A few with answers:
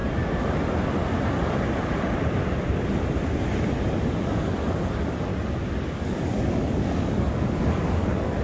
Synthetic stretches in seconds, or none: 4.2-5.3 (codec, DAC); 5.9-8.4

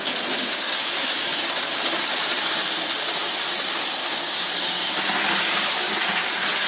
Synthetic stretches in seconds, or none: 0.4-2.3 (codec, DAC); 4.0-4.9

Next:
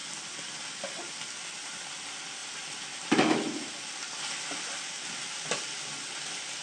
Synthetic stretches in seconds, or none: none

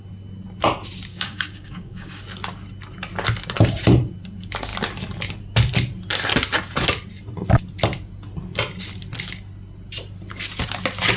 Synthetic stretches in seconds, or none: 1.1-2.2 (codec, DAC)

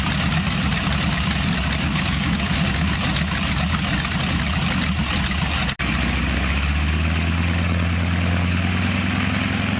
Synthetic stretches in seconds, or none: 1.9-2.9 (codec, DAC)

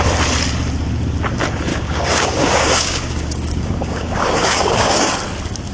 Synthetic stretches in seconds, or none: 1.7-5.1 (codec, DAC)